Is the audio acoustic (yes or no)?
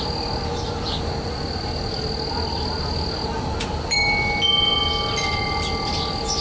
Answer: yes